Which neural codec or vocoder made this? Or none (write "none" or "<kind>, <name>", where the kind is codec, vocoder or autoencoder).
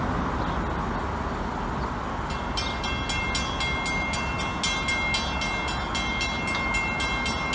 none